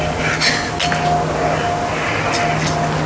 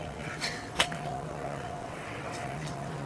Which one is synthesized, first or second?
second